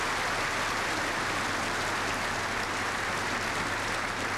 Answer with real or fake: real